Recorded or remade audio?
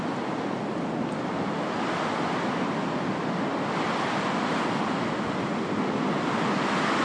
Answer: recorded